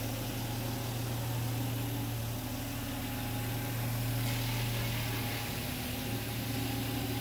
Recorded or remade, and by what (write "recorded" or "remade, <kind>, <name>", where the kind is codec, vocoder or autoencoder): recorded